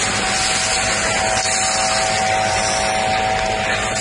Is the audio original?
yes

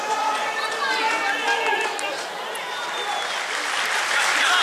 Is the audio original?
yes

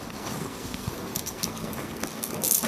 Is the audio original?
no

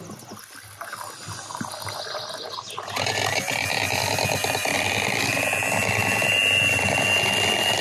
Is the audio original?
yes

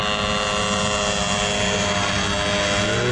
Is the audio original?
yes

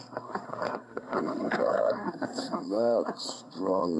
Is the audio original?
no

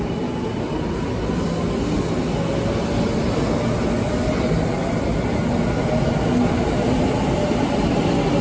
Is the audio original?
yes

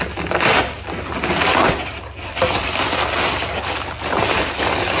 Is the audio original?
yes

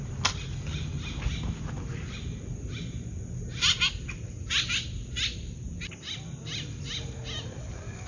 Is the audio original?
yes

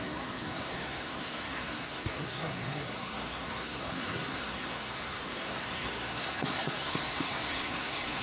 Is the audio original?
no